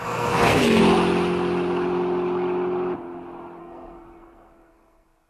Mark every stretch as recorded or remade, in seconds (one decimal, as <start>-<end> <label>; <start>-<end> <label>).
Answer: 0.0-0.8 remade; 0.8-3.6 recorded; 3.6-5.3 remade